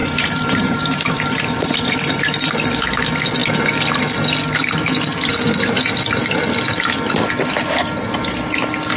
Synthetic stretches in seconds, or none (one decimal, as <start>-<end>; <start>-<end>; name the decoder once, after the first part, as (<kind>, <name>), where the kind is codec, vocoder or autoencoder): 0.0-2.2 (vocoder, BigVGAN v2)